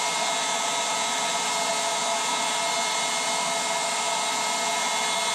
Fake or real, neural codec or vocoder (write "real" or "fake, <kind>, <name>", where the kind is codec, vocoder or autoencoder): real